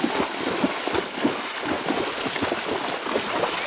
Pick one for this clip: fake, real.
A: real